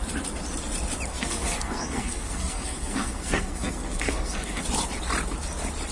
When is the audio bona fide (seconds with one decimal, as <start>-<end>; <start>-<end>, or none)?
0.0-1.1; 4.6-5.9